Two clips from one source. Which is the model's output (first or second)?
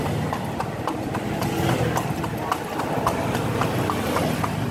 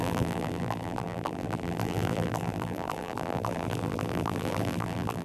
second